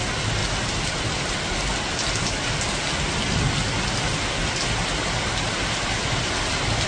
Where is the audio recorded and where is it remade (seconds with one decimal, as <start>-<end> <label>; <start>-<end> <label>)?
0.0-6.9 recorded